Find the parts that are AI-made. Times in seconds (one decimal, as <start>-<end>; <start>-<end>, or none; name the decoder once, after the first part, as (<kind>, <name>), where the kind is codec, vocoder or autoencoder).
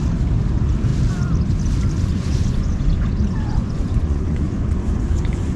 2.1-5.6 (vocoder, Vocos)